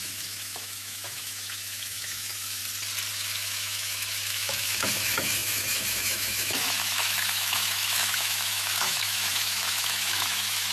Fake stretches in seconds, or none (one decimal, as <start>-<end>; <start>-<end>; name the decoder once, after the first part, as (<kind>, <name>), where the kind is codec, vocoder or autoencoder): 0.0-2.6 (autoencoder, DAC-VAE); 3.1-10.7